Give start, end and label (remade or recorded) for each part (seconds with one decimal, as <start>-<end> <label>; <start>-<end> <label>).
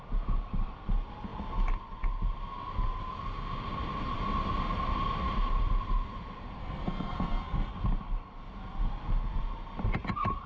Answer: 0.0-6.6 recorded; 6.6-7.7 remade; 7.7-10.5 recorded